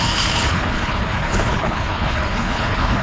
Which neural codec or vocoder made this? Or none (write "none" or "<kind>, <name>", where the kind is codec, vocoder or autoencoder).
codec, HILCodec